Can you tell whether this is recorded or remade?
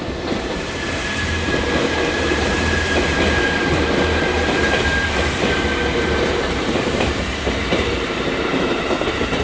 remade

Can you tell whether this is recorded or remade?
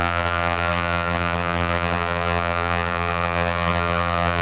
remade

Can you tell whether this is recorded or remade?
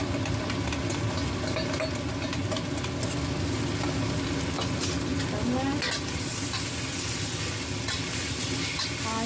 recorded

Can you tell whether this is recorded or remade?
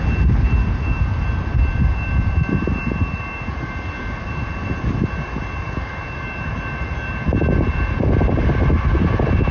recorded